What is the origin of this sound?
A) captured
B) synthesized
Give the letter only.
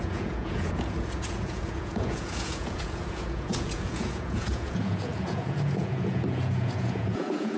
B